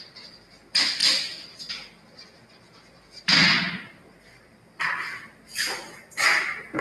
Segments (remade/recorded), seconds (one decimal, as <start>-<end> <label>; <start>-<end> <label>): 0.0-1.0 remade; 1.0-1.7 recorded; 1.7-3.4 remade; 3.4-4.3 recorded; 4.3-5.5 remade; 5.5-6.8 recorded

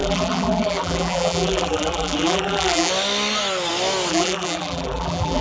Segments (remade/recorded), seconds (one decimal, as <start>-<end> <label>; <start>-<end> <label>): 0.0-2.9 remade; 2.9-4.1 recorded; 4.1-5.4 remade

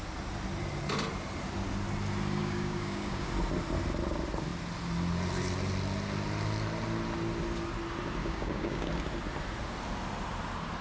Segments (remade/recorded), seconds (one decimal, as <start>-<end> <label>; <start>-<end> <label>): 0.0-2.4 recorded; 2.4-3.3 remade; 3.3-8.2 recorded; 8.2-8.9 remade; 8.9-10.8 recorded

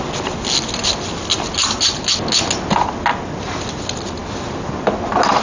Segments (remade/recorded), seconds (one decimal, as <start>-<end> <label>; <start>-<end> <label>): 0.0-5.4 recorded

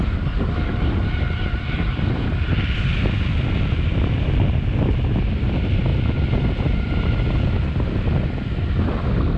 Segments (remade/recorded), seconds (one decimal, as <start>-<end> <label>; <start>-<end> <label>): 0.0-9.4 recorded